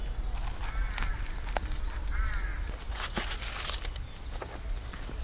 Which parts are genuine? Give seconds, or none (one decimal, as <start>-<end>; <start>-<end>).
0.0-5.2